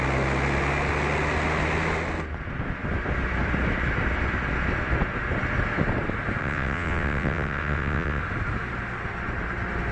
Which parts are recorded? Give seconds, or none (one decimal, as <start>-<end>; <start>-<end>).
0.0-6.4; 8.2-9.9